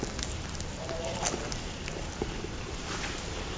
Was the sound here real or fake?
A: real